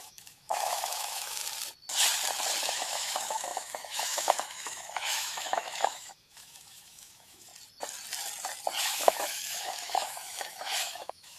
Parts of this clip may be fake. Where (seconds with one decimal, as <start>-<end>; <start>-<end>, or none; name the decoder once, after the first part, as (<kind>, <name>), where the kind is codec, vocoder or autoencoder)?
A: 0.0-1.4 (autoencoder, DAC-VAE); 2.6-7.5; 8.8-11.4